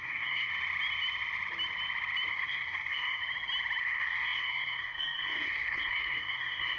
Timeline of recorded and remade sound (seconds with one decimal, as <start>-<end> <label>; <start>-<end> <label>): 0.0-0.5 remade; 0.5-2.3 recorded; 2.3-3.2 remade; 3.2-3.8 recorded; 3.8-6.8 remade